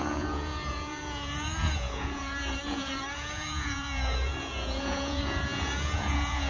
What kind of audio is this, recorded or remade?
remade